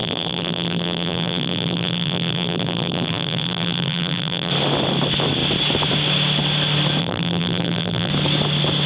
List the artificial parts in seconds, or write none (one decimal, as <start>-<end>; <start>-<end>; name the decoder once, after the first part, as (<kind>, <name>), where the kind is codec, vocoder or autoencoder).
0.0-4.5 (vocoder, BigVGAN v2); 7.0-8.1